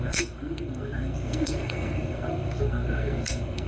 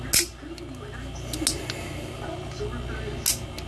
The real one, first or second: second